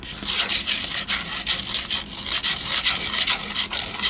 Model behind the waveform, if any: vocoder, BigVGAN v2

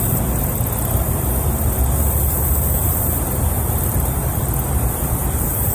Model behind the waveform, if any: vocoder, BigVGAN v2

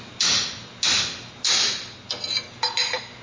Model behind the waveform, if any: none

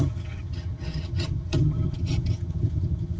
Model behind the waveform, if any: vocoder, HiFi-GAN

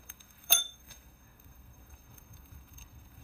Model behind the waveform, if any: codec, SNAC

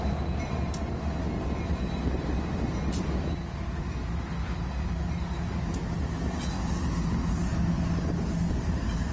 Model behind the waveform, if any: none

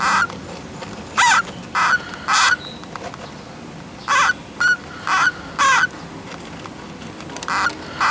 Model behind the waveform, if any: none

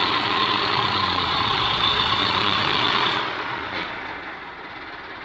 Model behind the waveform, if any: vocoder, Vocos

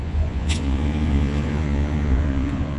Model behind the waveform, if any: vocoder, Vocos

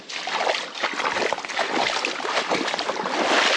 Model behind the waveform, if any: none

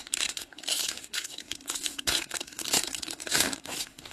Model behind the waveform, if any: codec, SNAC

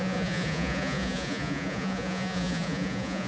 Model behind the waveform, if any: vocoder, Vocos